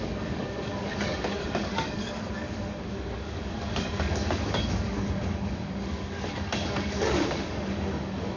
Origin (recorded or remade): remade